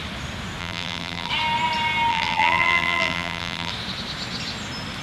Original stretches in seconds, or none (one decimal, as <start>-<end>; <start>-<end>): 0.0-0.6; 1.3-2.1; 3.7-5.0